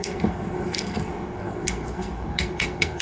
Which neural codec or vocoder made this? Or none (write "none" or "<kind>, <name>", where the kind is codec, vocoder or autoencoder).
codec, SNAC